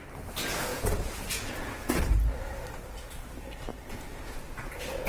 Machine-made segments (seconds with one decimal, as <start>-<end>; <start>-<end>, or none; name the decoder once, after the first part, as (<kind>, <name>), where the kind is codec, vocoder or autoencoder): 0.7-2.0 (vocoder, Vocos); 3.7-5.1